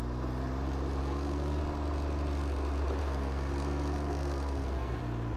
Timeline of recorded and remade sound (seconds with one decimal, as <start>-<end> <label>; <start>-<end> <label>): 0.0-1.0 recorded; 1.0-1.6 remade; 1.6-3.0 recorded; 3.0-5.0 remade; 5.0-5.4 recorded